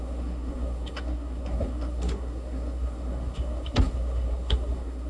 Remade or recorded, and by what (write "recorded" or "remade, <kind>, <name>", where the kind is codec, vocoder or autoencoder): remade, codec, SNAC